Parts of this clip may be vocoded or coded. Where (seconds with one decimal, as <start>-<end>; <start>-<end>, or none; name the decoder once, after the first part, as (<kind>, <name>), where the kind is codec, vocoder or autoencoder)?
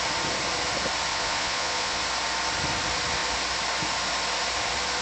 1.1-2.0 (vocoder, Vocos)